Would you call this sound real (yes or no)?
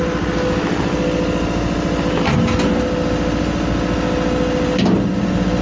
yes